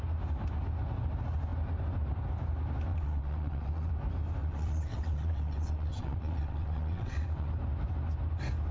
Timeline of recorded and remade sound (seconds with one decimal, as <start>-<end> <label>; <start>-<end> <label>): 0.0-2.9 recorded; 2.9-3.9 remade; 3.9-4.4 recorded; 4.4-7.5 remade; 7.5-8.7 recorded